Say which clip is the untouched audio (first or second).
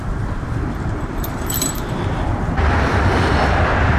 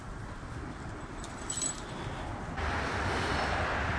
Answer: second